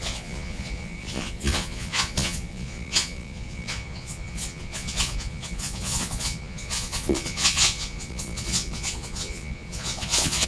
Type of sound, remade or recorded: remade